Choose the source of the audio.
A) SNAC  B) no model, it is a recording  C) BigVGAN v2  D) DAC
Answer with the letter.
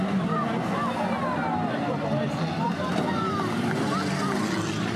C